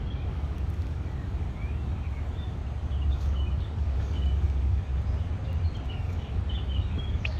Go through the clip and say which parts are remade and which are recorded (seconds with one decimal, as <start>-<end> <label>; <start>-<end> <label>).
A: 0.0-2.6 remade; 2.6-3.1 recorded; 3.1-4.9 remade; 4.9-5.9 recorded; 5.9-7.4 remade